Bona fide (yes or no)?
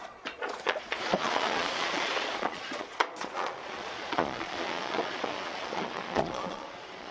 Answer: no